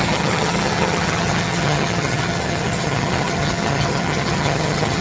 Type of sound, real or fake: fake